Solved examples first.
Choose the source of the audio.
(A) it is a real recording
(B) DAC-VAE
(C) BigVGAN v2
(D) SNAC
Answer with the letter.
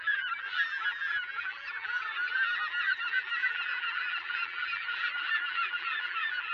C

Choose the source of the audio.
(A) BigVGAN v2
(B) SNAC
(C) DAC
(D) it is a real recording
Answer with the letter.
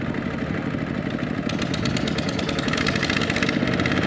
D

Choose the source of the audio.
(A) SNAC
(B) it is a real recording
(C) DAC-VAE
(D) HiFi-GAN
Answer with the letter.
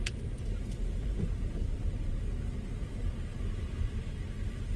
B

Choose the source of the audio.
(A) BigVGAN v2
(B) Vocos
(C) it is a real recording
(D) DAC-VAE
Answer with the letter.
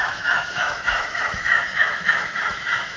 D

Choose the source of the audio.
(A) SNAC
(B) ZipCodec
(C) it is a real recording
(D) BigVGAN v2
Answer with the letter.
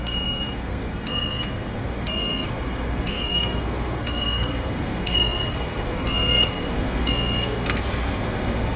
A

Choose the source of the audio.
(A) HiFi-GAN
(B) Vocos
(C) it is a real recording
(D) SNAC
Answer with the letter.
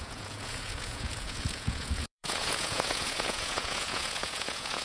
B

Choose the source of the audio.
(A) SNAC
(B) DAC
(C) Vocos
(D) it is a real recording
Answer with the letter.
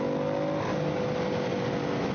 D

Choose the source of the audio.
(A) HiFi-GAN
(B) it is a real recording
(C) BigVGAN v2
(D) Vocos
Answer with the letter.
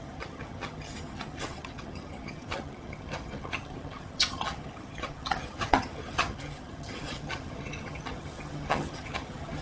A